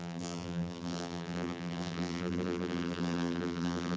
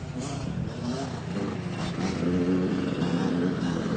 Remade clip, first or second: first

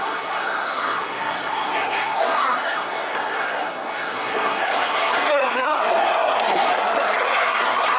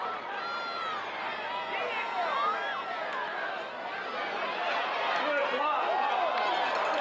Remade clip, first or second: first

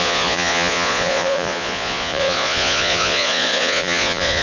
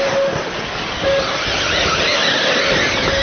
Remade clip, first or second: first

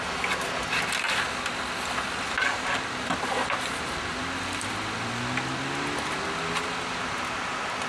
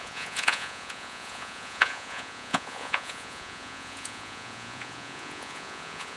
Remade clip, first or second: second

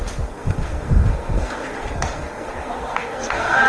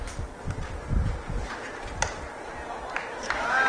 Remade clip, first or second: first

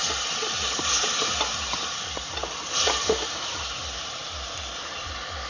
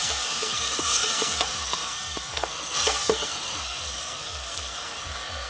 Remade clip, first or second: second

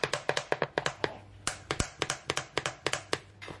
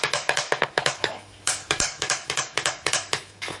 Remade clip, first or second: second